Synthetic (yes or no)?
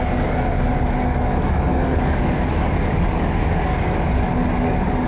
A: yes